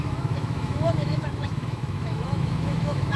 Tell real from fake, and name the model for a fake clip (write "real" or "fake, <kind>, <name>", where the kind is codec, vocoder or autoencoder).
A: fake, autoencoder, DAC-VAE